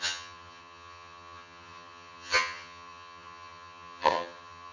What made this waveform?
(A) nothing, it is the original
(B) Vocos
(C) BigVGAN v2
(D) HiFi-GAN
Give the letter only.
D